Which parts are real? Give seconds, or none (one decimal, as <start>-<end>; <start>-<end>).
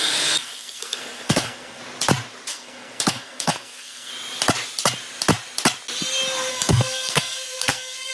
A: 1.8-2.5; 4.1-6.5